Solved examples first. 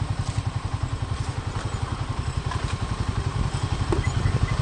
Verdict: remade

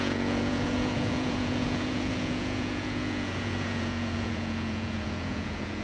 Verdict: remade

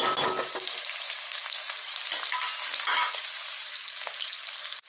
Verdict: recorded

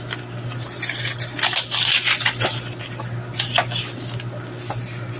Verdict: recorded